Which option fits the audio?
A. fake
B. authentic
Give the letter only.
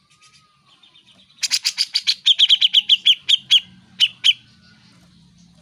B